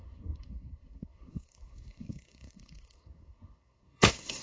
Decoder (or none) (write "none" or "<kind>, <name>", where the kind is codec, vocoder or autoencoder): codec, SNAC